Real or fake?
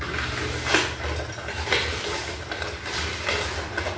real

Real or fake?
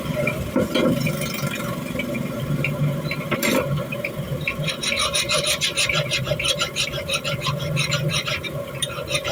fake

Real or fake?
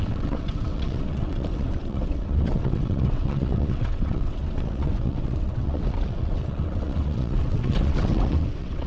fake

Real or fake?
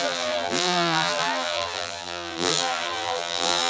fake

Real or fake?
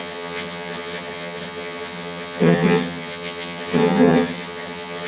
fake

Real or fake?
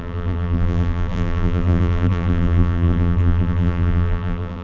fake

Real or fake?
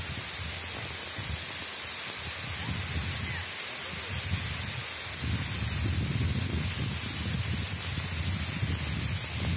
real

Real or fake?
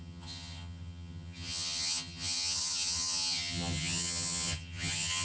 fake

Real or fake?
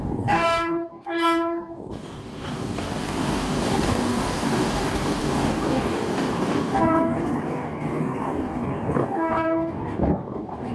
fake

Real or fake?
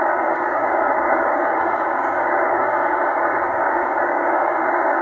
fake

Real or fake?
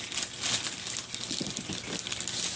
real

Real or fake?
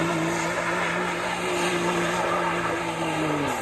real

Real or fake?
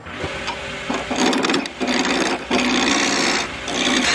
real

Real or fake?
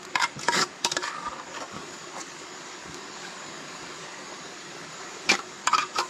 fake